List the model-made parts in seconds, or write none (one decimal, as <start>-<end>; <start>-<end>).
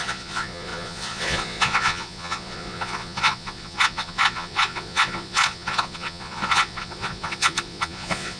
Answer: 0.0-8.4